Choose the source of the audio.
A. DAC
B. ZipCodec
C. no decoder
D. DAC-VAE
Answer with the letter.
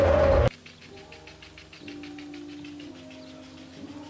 C